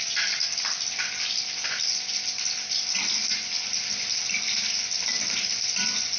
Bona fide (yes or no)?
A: yes